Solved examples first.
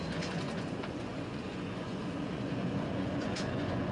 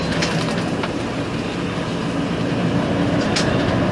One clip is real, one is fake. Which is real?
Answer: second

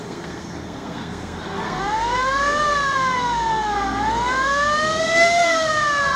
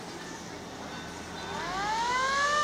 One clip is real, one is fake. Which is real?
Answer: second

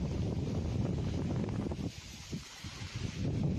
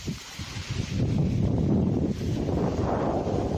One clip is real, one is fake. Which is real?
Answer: second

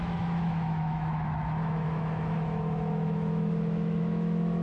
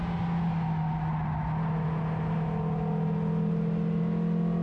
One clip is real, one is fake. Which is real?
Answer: second